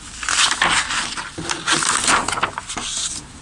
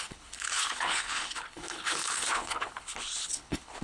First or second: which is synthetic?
second